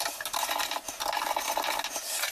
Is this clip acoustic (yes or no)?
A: yes